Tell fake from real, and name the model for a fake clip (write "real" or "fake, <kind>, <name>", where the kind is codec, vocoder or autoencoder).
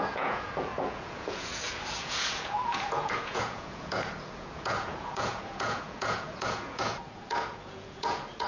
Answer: fake, vocoder, Vocos